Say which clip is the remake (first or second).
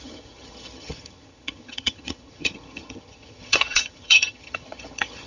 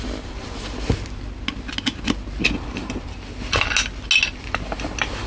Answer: first